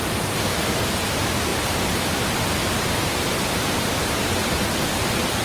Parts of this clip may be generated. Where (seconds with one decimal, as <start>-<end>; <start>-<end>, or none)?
1.5-4.7

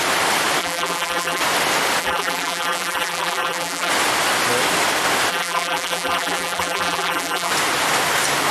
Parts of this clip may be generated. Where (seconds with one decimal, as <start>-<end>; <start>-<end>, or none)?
0.6-1.4; 2.0-3.9; 5.3-7.5

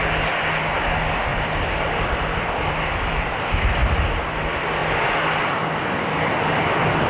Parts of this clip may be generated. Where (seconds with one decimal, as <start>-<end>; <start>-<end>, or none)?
1.3-2.7